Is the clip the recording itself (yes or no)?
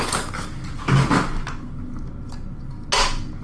yes